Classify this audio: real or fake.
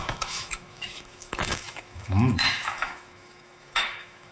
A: fake